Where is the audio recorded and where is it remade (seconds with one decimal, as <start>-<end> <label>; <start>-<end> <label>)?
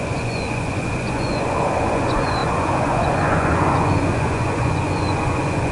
0.0-5.7 remade